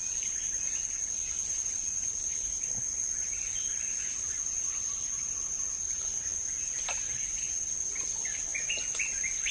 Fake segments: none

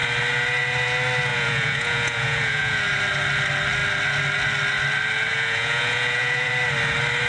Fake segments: 1.3-2.8 (vocoder, Vocos); 5.3-6.5

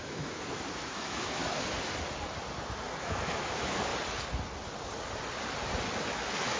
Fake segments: 0.0-1.4 (autoencoder, DAC-VAE); 3.0-3.9; 6.1-6.6